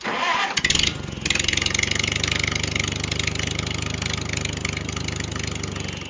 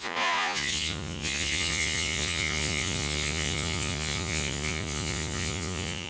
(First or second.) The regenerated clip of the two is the second